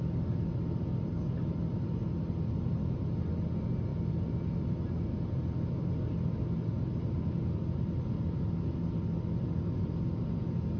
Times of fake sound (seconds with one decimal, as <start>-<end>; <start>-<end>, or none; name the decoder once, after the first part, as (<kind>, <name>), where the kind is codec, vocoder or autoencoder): none